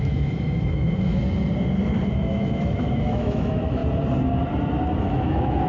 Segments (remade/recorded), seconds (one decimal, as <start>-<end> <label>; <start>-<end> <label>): 0.0-1.2 remade; 1.2-2.1 recorded; 2.1-3.8 remade; 3.8-5.0 recorded; 5.0-5.7 remade